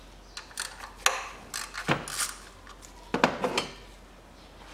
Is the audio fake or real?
real